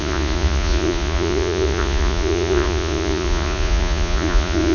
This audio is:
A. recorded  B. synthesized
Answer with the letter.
B